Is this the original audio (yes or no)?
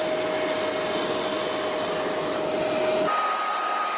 yes